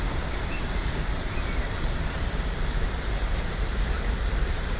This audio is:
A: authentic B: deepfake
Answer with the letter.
B